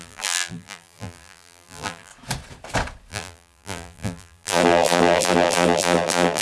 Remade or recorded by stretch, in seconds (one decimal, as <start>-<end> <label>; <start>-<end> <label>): 0.0-2.1 remade; 2.1-3.1 recorded; 3.1-6.4 remade